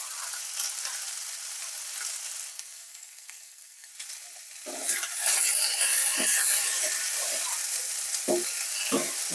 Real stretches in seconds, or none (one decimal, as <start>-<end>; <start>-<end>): 0.0-2.5; 3.9-9.3